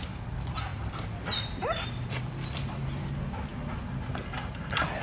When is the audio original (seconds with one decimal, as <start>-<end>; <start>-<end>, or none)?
0.0-0.7; 3.0-5.0